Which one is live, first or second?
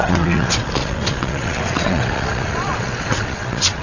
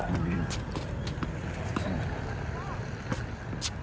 second